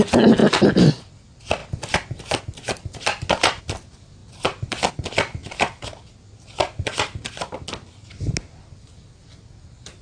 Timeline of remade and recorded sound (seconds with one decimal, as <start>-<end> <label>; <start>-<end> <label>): 0.0-4.2 recorded; 4.2-4.9 remade; 4.9-5.4 recorded; 5.4-6.1 remade; 6.1-10.0 recorded